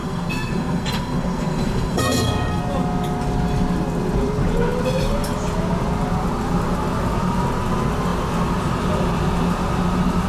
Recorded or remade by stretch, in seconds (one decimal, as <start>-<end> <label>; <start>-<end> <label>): 0.0-2.6 remade; 2.6-10.3 recorded